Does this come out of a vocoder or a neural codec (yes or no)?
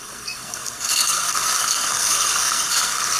yes